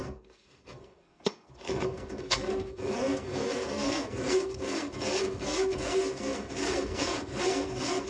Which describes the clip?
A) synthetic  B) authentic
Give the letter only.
A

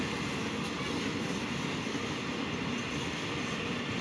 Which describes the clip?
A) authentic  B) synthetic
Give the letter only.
A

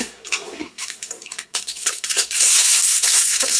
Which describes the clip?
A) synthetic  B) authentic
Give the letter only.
A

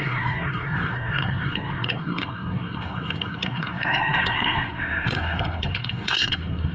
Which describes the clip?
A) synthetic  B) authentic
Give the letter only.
A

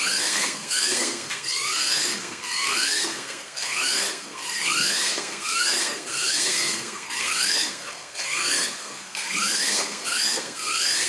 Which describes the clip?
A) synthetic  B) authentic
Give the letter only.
A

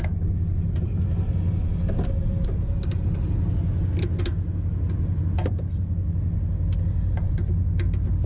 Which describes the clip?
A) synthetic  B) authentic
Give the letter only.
B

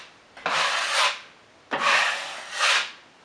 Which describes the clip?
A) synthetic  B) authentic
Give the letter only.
B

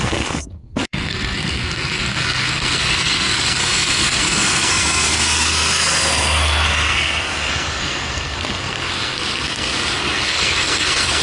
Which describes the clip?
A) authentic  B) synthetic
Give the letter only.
B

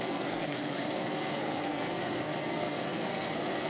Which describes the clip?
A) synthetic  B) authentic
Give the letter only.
A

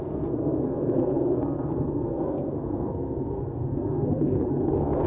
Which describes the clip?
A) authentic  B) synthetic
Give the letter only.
B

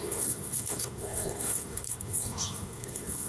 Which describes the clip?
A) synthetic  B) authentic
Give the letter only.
A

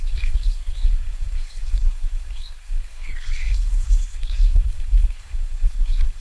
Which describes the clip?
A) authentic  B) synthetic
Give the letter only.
B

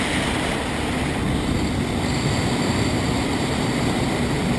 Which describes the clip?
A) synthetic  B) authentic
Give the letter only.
B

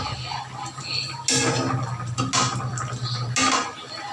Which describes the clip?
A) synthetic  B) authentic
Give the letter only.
B